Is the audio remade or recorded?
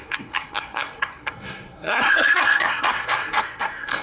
remade